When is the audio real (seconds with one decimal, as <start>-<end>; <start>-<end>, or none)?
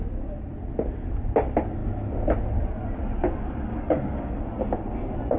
0.0-3.7; 4.4-5.4